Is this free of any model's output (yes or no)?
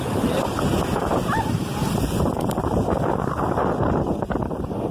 no